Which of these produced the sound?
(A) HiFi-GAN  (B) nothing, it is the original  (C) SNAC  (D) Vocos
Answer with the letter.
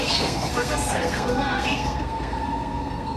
C